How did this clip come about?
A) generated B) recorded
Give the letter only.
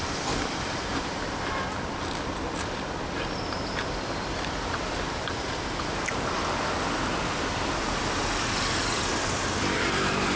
A